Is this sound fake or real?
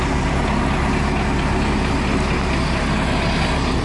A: real